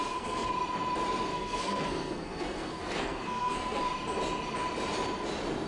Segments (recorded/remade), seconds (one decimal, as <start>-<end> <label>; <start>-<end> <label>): 0.0-0.5 remade; 0.5-1.3 recorded; 1.3-3.8 remade; 3.8-5.7 recorded